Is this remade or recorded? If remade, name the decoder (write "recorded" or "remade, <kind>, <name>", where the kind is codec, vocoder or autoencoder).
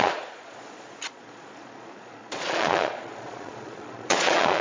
remade, vocoder, Vocos